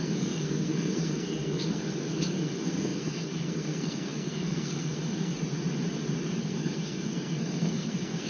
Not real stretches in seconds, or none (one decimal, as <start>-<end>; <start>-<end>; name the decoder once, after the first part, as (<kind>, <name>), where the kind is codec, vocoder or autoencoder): 0.0-5.3 (codec, SNAC); 6.4-8.3